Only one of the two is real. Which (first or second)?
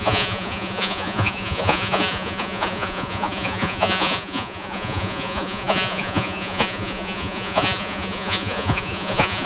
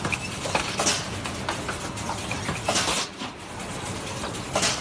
second